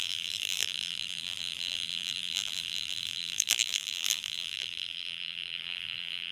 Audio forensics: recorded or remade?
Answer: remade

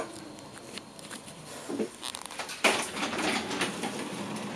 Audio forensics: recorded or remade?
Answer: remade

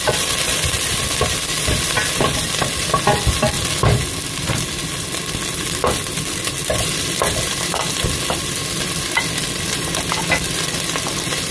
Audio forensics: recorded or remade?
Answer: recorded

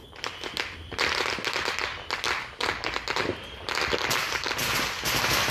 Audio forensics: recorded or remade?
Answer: recorded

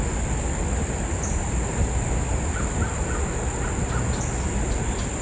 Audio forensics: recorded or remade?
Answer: recorded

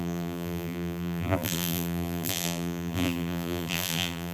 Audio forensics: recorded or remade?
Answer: remade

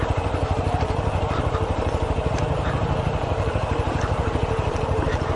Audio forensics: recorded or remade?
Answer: remade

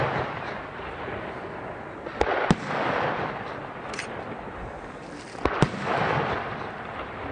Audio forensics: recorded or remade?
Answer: recorded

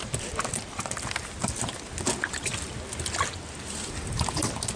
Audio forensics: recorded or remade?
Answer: recorded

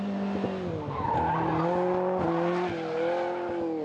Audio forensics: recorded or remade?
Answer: recorded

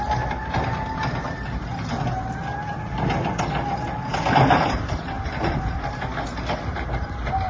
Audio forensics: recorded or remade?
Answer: recorded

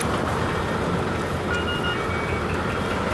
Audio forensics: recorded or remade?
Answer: recorded